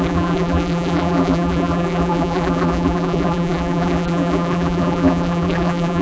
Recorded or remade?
remade